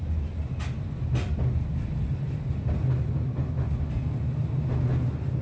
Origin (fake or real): real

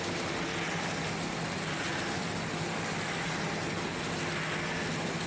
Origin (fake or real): real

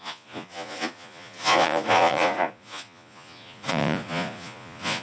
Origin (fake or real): fake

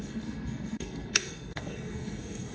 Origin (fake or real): fake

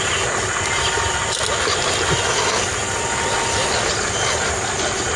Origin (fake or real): real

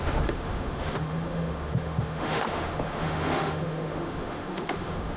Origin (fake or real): fake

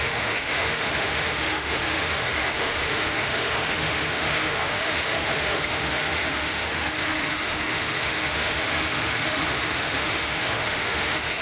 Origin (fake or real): fake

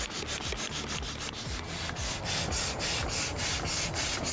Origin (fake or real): real